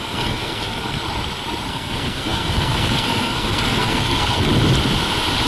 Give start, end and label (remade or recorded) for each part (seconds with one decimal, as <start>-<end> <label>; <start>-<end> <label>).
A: 0.0-1.0 remade; 1.0-1.7 recorded; 1.7-4.5 remade; 4.5-5.5 recorded